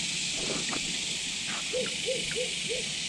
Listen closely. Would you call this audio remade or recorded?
recorded